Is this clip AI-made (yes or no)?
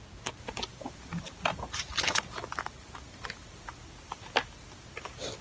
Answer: no